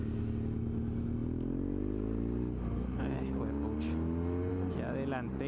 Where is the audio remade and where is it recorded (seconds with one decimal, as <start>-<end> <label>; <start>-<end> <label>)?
0.0-5.5 recorded